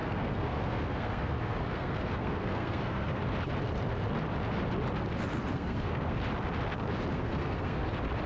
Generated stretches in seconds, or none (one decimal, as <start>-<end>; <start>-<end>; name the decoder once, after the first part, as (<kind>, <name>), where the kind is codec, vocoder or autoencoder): 0.0-3.2 (codec, SNAC); 5.5-6.2; 7.1-7.9